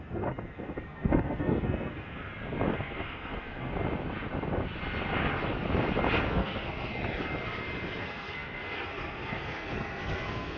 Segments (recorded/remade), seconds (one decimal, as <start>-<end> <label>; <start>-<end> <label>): 0.0-2.2 remade; 2.2-2.7 recorded; 2.7-3.7 remade; 3.7-6.3 recorded; 6.3-6.9 remade; 6.9-8.0 recorded; 8.0-10.6 remade